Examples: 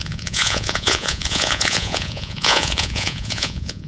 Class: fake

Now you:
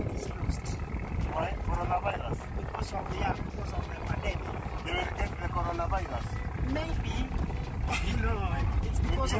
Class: real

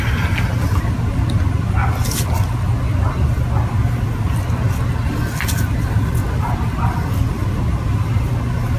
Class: real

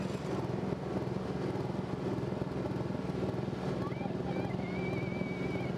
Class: real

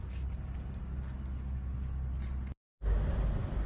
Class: real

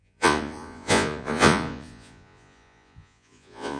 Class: fake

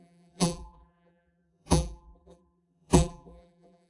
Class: fake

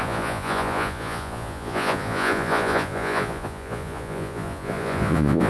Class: fake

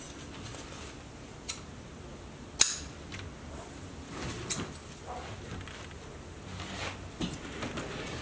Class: real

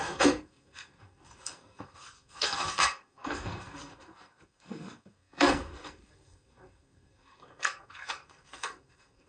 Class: fake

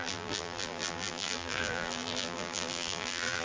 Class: fake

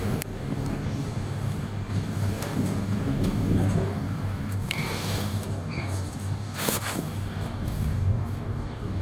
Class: fake